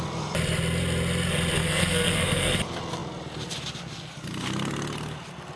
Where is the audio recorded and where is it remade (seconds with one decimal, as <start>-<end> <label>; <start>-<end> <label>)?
0.0-1.6 recorded; 1.6-2.6 remade; 2.6-5.6 recorded